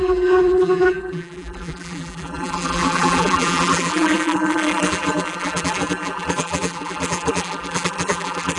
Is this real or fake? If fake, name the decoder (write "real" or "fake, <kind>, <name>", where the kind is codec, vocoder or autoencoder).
fake, vocoder, BigVGAN v2